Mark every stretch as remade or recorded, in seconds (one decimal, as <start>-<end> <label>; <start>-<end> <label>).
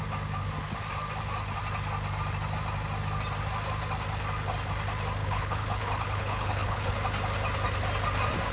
0.0-5.2 recorded; 5.2-6.9 remade; 6.9-8.5 recorded